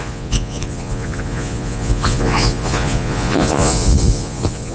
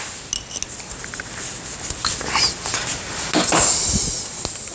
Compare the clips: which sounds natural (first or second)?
second